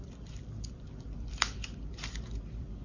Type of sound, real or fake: fake